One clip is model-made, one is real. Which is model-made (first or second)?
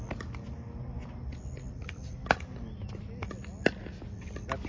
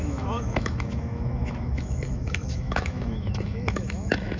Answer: second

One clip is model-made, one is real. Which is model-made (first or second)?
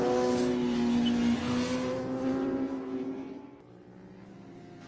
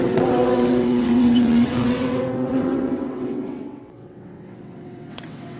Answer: second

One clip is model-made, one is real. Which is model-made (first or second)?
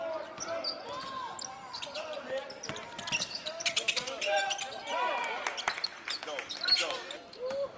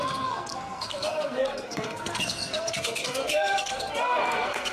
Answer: second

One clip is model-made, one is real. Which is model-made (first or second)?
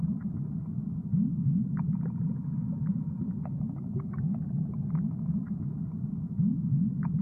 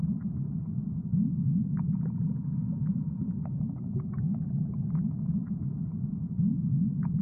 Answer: second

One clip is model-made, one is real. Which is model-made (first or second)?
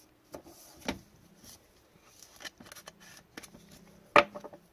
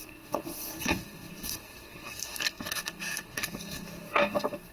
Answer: second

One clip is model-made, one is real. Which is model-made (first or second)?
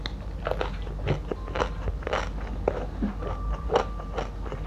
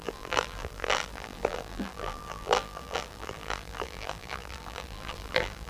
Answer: second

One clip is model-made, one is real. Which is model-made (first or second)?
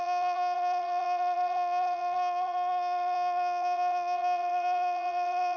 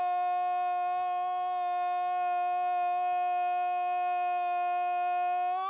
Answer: first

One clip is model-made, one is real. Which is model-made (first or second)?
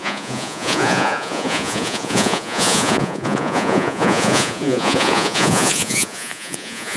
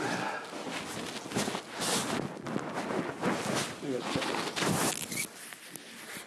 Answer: first